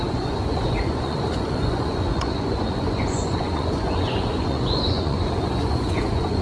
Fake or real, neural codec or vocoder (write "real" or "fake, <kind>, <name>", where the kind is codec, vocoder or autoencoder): fake, vocoder, Vocos